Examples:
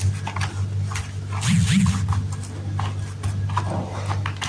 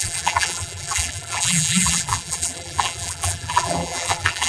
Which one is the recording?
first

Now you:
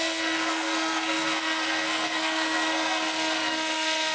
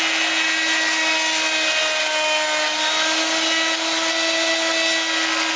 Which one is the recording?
second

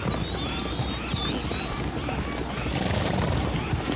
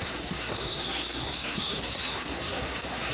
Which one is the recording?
first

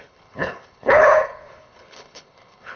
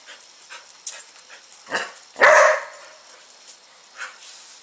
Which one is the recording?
second